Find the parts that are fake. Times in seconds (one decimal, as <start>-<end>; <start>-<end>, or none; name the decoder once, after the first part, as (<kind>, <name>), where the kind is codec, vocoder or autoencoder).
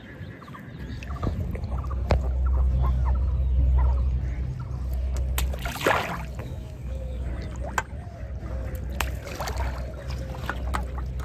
6.4-7.3 (codec, DAC)